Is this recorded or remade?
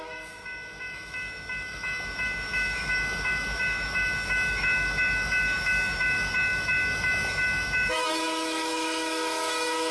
remade